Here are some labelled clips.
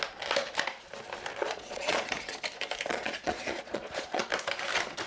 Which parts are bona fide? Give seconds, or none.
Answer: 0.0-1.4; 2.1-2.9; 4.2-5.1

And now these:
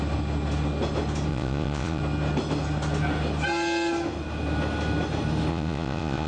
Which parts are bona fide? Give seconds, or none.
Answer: 0.0-1.3; 2.0-5.5

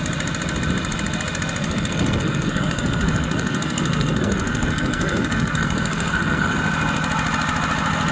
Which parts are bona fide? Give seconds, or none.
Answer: 0.0-1.6; 6.5-8.1

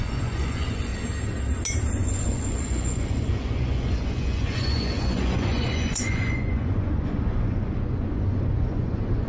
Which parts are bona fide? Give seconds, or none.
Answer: 0.9-1.9

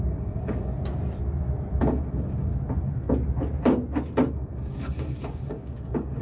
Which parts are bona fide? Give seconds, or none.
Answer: 0.7-1.8; 2.5-4.3

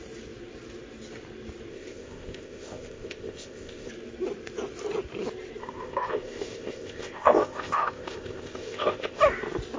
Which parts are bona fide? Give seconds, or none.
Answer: 0.0-1.7; 3.9-5.6; 9.2-9.8

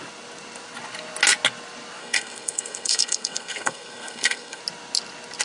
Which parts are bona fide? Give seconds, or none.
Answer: 0.0-2.0; 4.6-5.4